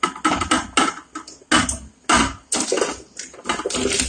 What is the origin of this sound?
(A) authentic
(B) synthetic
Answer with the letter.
A